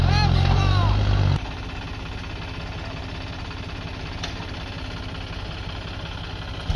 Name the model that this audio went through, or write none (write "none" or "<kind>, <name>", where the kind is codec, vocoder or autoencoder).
none